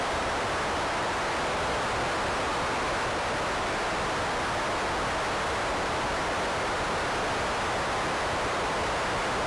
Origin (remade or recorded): recorded